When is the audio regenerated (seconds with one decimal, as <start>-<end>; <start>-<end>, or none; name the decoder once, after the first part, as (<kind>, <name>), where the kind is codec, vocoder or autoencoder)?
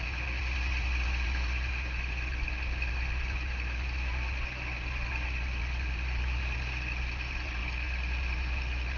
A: none